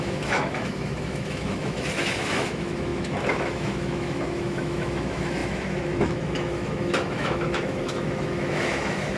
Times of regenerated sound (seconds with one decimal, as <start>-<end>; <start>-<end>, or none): 0.0-9.2